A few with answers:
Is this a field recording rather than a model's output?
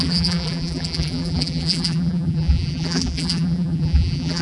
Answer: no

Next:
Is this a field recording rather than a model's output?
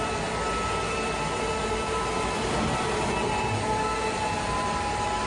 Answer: yes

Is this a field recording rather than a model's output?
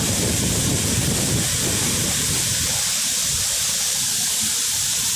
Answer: no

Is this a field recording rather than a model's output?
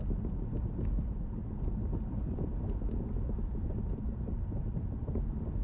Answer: yes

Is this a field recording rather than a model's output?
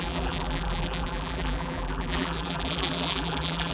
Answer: no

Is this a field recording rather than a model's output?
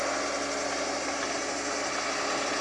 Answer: yes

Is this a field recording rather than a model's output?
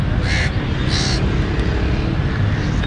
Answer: yes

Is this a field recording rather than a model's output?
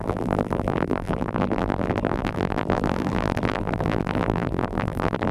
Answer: no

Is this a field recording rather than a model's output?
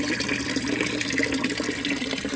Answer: no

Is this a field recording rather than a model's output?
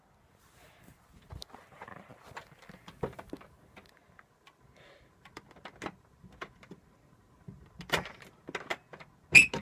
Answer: yes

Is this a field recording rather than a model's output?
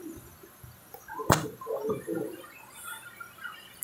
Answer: yes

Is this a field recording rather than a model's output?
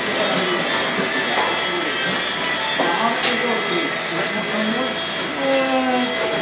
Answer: yes